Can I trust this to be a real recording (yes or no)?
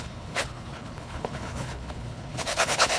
no